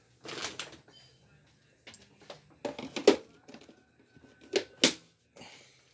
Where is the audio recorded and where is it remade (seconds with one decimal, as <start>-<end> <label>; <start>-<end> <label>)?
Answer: 0.0-5.9 recorded